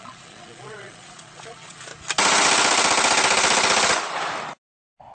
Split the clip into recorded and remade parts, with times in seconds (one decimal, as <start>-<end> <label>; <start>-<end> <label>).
0.0-1.9 remade; 1.9-5.1 recorded